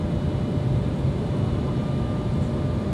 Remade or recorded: recorded